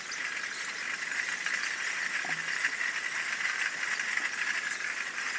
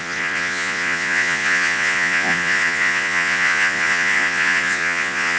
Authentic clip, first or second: first